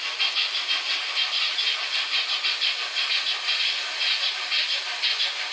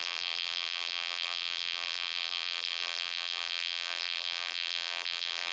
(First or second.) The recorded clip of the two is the first